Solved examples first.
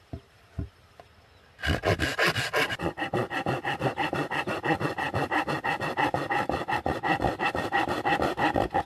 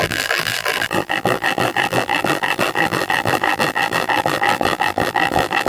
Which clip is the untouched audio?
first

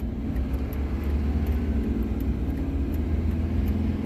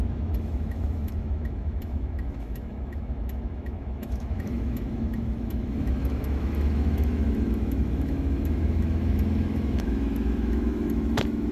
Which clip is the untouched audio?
first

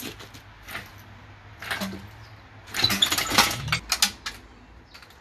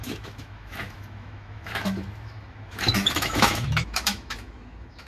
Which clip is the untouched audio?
first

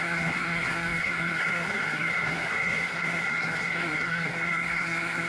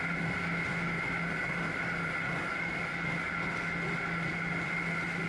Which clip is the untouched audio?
second